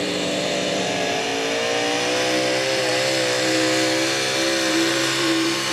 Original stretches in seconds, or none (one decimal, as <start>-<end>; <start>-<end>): 1.3-4.7